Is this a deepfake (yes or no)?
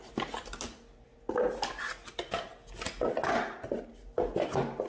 no